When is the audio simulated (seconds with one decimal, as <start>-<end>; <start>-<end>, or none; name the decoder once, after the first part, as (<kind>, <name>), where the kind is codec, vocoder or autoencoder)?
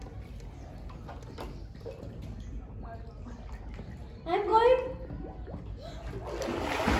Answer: none